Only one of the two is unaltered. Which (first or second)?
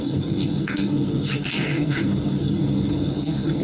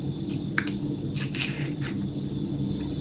second